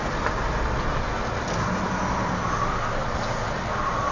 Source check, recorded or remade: recorded